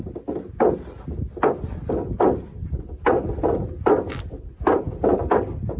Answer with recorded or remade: recorded